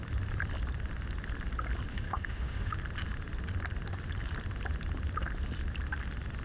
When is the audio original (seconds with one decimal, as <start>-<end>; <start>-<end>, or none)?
0.0-1.9; 2.7-6.4